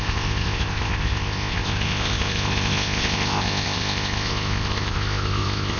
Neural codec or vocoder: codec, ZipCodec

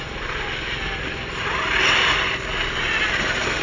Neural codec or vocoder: none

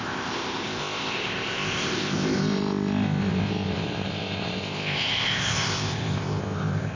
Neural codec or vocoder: codec, ZipCodec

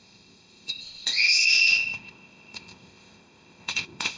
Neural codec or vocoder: codec, ZipCodec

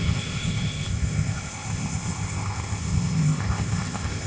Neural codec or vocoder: codec, ZipCodec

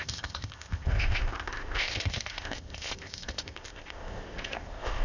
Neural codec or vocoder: codec, ZipCodec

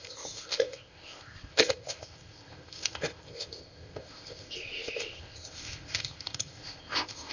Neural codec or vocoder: codec, ZipCodec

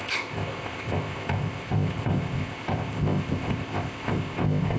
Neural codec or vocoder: codec, ZipCodec